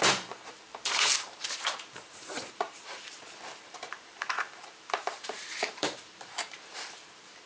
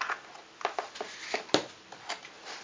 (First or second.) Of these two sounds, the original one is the second